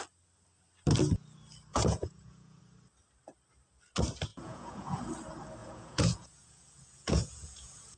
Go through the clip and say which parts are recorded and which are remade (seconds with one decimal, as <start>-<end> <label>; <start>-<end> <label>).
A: 0.0-1.7 recorded; 1.7-2.6 remade; 2.6-4.3 recorded; 4.3-5.0 remade; 5.0-5.6 recorded; 5.6-8.0 remade